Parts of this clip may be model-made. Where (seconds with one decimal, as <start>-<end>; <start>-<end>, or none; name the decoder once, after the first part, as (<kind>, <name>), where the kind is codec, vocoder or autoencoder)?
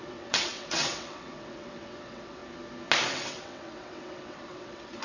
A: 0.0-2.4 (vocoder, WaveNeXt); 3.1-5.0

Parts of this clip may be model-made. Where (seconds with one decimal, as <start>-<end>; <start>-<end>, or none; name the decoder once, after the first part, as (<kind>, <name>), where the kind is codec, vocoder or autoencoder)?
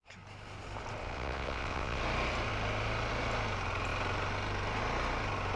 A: 1.0-2.0 (vocoder, WaveNeXt)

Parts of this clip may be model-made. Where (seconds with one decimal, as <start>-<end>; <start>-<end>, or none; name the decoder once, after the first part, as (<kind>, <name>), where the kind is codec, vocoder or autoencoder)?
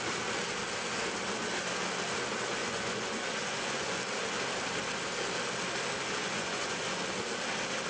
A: 2.6-4.0 (vocoder, Vocos); 6.2-7.0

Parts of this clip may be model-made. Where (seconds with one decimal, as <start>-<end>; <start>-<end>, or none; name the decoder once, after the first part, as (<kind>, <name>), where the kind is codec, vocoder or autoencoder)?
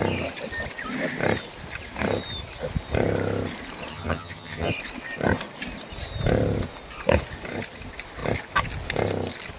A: 3.9-4.7 (vocoder, HiFi-GAN)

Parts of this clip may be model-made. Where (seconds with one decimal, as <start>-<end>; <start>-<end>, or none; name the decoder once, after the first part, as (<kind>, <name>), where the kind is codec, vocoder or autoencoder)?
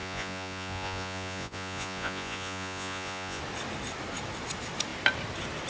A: 0.0-3.4 (vocoder, Vocos)